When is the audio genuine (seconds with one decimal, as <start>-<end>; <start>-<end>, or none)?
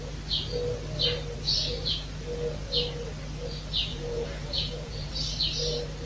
0.0-3.9; 5.1-6.1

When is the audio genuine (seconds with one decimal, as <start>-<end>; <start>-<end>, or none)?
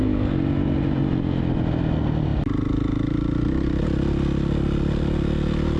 0.0-5.8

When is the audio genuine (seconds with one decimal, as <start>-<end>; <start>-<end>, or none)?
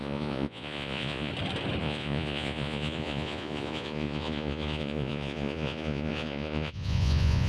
1.3-1.8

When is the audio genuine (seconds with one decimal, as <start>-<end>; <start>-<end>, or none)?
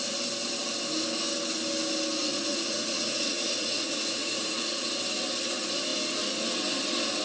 0.0-2.2; 4.9-7.2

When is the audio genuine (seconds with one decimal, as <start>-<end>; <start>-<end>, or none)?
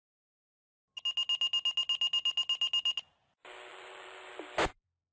0.0-3.7; 4.3-5.1